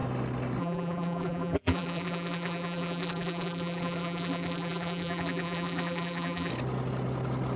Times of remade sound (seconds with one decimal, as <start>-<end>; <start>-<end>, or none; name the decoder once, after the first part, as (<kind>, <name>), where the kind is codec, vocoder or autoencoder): 0.6-6.5 (vocoder, BigVGAN v2)